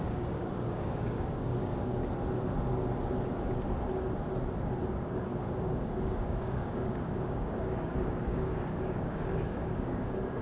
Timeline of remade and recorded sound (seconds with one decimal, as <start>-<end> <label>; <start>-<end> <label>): 0.0-2.0 remade; 2.0-4.9 recorded; 4.9-10.4 remade